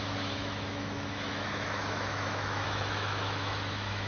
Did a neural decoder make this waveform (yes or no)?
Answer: yes